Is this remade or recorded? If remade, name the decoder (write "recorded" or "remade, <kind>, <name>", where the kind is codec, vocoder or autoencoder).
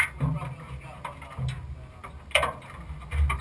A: recorded